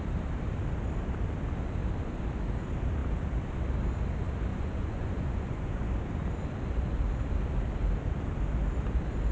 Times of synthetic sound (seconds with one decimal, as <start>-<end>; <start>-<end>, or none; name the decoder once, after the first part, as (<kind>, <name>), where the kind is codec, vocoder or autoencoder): 4.5-5.9 (vocoder, Vocos)